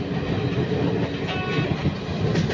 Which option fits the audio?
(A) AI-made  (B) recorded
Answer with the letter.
B